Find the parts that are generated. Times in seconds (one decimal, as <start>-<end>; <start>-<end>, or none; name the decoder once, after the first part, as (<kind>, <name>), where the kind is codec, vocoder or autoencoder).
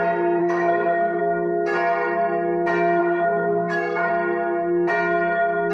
0.4-1.2 (codec, SNAC); 3.0-4.1